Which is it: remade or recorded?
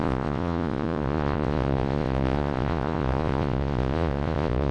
remade